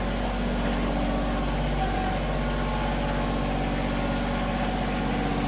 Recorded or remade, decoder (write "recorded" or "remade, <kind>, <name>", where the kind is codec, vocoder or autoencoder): recorded